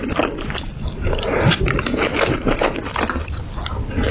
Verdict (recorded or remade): recorded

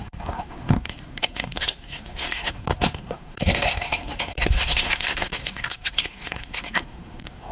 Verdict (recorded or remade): remade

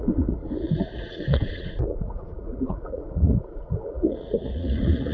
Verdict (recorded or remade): remade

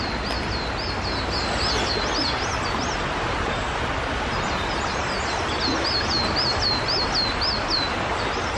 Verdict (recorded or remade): recorded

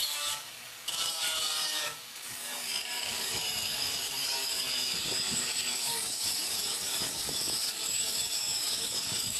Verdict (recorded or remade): remade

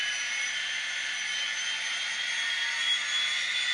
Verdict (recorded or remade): recorded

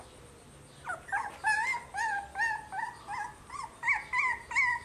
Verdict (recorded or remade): recorded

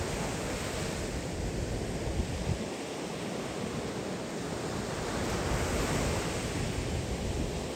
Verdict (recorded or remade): recorded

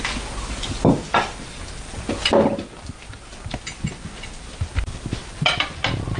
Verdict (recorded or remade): recorded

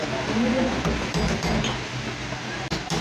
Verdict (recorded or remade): recorded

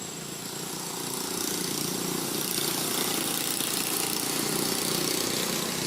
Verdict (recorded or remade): recorded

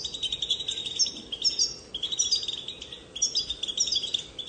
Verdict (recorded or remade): recorded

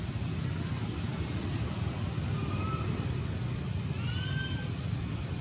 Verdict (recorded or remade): recorded